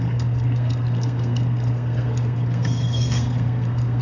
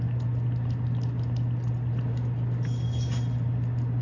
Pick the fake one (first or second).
first